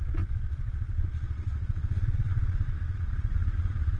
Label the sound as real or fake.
fake